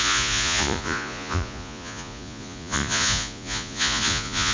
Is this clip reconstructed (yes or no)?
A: yes